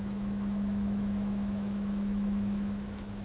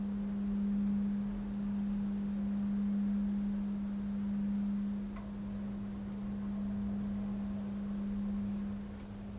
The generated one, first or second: first